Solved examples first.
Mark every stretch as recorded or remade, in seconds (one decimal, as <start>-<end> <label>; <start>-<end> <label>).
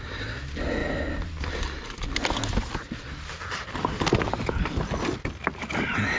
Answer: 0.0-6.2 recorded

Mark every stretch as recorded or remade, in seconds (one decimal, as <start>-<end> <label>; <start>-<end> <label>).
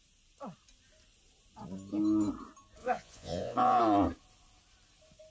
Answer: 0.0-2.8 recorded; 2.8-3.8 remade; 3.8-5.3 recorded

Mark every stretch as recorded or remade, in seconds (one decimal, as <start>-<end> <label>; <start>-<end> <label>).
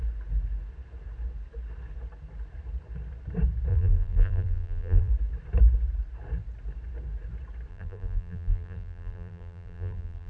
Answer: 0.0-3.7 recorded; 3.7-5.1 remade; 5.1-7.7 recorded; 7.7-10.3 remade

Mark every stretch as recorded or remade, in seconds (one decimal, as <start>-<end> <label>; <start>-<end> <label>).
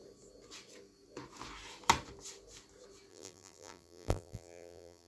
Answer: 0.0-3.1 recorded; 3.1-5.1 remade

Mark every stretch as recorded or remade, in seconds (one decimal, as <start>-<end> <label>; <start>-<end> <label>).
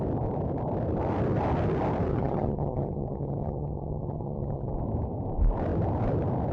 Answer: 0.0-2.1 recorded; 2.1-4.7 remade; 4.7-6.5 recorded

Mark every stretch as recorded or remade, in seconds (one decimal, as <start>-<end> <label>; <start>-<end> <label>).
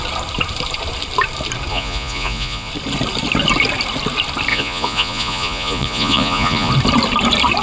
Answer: 0.0-1.7 recorded; 1.7-2.7 remade; 2.7-4.5 recorded; 4.5-6.7 remade; 6.7-7.6 recorded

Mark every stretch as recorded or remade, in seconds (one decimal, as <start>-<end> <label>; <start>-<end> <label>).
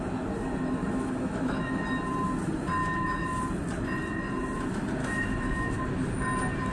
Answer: 0.0-0.8 recorded; 0.8-1.8 remade; 1.8-2.8 recorded; 2.8-3.4 remade; 3.4-5.0 recorded; 5.0-5.8 remade; 5.8-6.7 recorded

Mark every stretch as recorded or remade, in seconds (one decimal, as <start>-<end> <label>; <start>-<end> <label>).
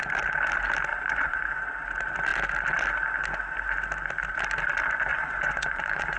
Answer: 0.0-0.9 recorded; 0.9-1.6 remade; 1.6-5.1 recorded; 5.1-6.2 remade